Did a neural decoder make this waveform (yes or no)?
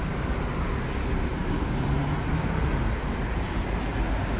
no